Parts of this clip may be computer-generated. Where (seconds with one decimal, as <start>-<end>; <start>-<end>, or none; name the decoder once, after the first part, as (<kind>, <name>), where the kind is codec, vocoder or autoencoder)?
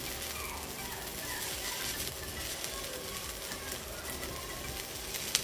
none